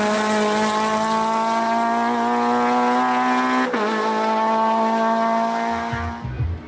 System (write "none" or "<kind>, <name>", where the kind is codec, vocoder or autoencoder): none